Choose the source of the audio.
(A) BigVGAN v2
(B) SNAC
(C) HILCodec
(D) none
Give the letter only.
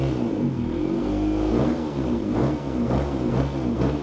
B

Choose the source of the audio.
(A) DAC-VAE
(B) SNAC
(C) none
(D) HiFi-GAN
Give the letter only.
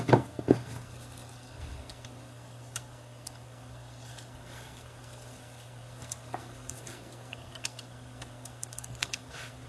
B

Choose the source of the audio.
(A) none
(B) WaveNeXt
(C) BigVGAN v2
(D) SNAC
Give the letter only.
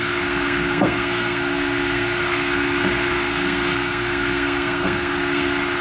D